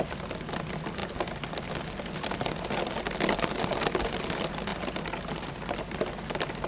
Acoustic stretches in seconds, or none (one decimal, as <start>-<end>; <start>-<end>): 0.0-6.7